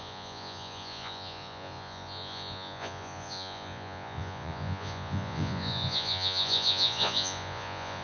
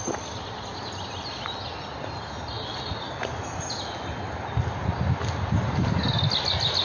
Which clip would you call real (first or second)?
second